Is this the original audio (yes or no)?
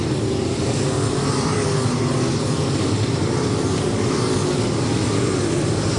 no